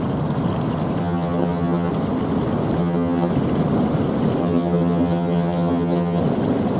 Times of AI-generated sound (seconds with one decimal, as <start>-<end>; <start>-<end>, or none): 1.0-1.9; 2.8-3.3; 4.4-6.2